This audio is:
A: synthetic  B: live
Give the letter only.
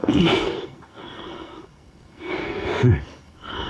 A